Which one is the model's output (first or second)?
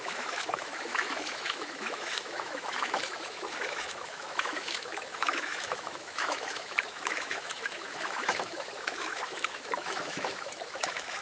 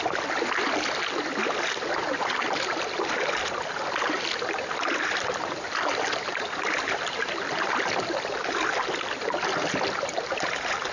first